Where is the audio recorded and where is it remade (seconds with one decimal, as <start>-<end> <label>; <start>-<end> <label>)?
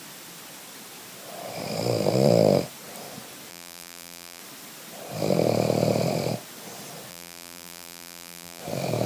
0.0-3.5 recorded; 3.5-4.4 remade; 4.4-7.1 recorded; 7.1-8.6 remade; 8.6-9.1 recorded